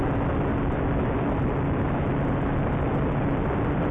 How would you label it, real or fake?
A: real